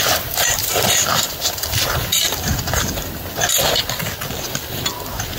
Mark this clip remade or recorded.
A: recorded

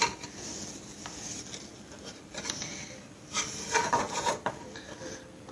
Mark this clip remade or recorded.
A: remade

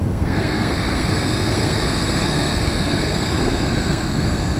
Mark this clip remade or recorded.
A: remade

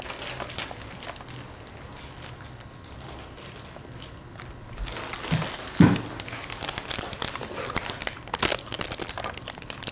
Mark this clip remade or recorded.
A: recorded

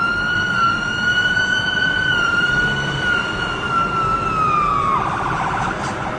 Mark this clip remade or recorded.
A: recorded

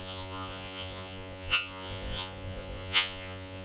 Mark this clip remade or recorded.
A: remade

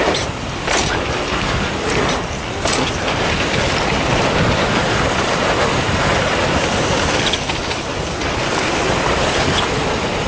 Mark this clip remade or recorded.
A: recorded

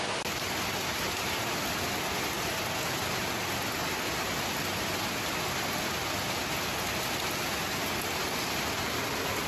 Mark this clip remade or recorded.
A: recorded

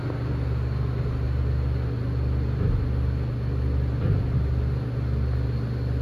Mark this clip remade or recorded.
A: recorded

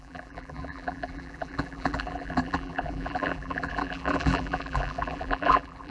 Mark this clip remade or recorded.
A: remade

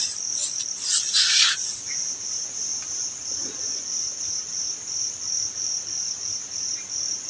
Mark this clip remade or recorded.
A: recorded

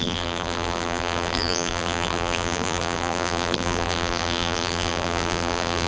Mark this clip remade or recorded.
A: remade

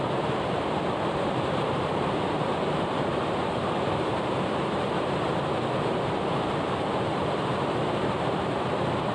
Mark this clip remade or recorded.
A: remade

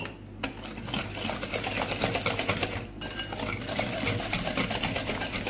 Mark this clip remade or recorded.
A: recorded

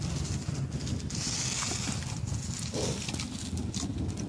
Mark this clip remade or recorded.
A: recorded